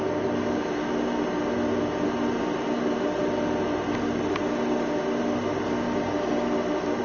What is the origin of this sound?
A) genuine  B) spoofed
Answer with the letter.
A